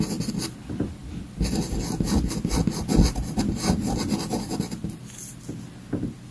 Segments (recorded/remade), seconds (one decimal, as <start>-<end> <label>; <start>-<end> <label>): 0.0-6.3 recorded